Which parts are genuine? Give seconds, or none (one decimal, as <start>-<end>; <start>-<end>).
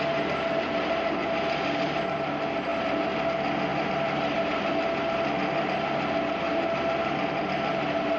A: 0.0-8.2